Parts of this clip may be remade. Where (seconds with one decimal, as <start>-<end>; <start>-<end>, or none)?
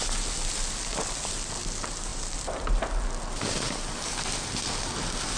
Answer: none